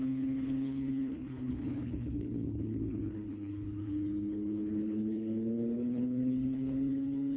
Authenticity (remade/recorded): remade